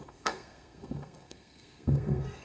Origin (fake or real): fake